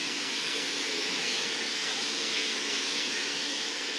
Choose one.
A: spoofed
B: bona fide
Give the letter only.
A